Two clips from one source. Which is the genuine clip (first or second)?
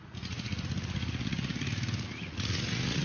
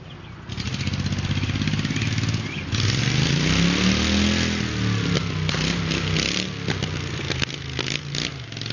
second